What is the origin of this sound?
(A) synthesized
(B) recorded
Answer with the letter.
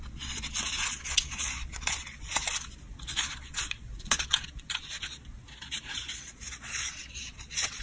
A